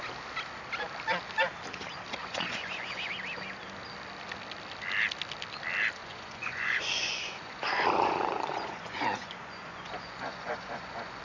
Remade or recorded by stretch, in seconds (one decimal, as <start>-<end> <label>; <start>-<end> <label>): 0.0-2.2 recorded; 2.2-3.1 remade; 3.1-6.0 recorded; 6.0-11.2 remade

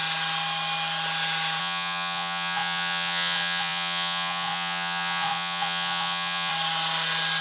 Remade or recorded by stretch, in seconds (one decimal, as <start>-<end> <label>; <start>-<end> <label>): 0.0-1.6 recorded; 1.6-6.5 remade; 6.5-7.4 recorded

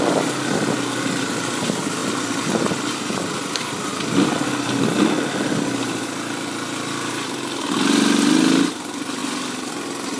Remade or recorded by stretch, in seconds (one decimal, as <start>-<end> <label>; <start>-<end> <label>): 0.0-10.2 recorded

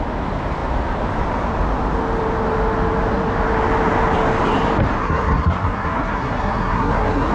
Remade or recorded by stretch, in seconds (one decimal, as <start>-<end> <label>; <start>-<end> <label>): 0.0-5.0 recorded; 5.0-7.3 remade